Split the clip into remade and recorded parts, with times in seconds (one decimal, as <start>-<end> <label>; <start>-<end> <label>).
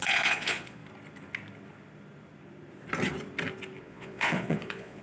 0.0-0.8 remade; 0.8-3.8 recorded; 3.8-5.0 remade